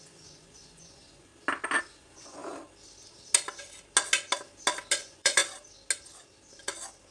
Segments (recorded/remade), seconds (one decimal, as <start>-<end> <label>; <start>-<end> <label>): 0.0-1.3 remade; 1.3-1.8 recorded; 1.8-2.4 remade; 2.4-5.0 recorded; 5.0-5.4 remade; 5.4-7.1 recorded